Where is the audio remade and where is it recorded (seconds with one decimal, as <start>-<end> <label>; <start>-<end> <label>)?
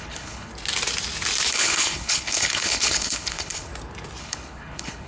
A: 0.0-0.5 remade; 0.5-1.5 recorded; 1.5-3.7 remade; 3.7-4.2 recorded; 4.2-5.1 remade